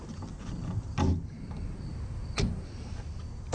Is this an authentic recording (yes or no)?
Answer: yes